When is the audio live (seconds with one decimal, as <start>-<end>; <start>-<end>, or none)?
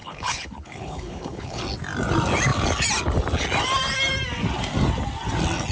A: 1.6-5.7